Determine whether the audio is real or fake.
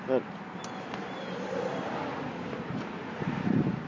real